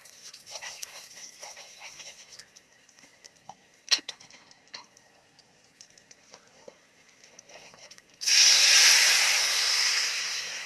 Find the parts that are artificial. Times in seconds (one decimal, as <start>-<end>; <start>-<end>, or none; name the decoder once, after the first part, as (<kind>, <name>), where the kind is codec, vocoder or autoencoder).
0.0-8.6 (codec, SNAC); 9.4-10.7